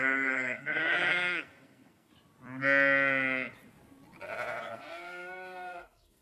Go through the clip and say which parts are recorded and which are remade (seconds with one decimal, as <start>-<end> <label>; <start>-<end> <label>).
0.0-2.1 remade; 2.1-4.6 recorded; 4.6-6.2 remade